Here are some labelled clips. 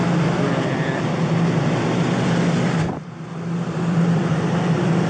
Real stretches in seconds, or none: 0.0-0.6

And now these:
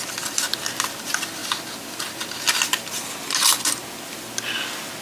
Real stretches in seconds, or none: 0.0-5.0

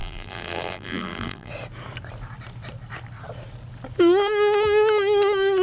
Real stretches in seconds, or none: 1.5-5.6

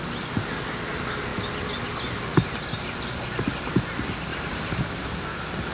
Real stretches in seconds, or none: 0.0-4.3; 4.8-5.7